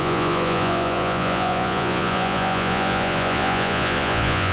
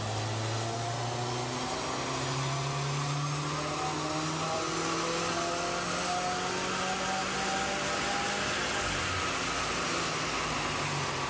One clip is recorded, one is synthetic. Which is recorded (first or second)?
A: second